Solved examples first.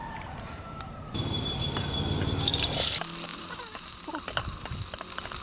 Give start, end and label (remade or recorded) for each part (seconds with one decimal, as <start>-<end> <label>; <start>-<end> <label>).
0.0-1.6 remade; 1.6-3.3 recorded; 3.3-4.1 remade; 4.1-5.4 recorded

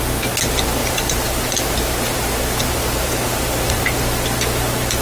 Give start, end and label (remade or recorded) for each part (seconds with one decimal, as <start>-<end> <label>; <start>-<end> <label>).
0.0-0.8 recorded; 0.8-3.7 remade; 3.7-5.0 recorded

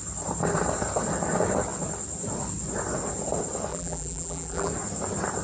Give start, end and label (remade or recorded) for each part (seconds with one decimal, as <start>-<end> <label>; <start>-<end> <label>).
0.0-3.7 recorded; 3.7-4.7 remade; 4.7-5.4 recorded